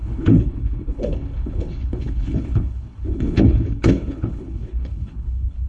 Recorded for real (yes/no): no